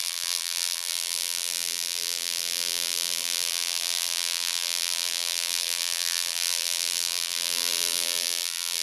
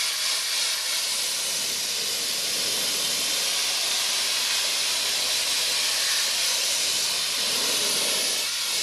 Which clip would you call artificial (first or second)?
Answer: first